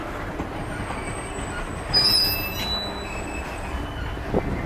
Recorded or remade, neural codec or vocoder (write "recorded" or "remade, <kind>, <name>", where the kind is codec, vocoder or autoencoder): recorded